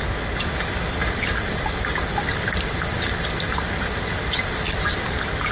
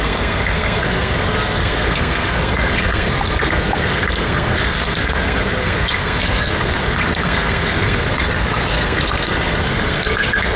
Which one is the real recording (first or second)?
first